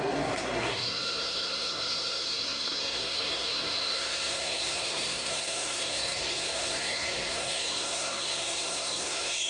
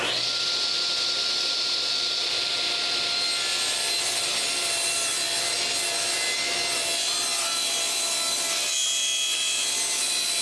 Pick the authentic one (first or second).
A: second